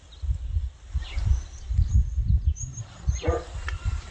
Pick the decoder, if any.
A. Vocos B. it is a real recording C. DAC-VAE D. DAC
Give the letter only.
B